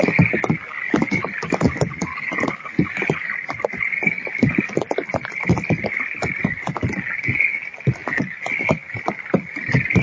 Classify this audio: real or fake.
real